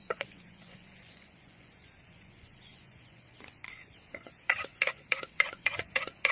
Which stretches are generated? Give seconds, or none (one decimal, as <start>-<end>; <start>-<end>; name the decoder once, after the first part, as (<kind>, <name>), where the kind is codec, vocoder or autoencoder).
0.0-6.3 (vocoder, Vocos)